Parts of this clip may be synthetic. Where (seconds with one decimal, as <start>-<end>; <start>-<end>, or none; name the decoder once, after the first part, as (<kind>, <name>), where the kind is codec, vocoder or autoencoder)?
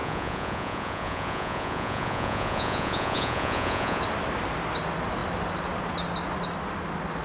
0.0-4.0 (vocoder, Vocos)